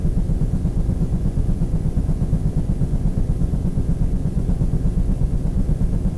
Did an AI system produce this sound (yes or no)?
yes